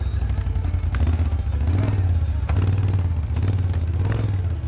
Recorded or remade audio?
recorded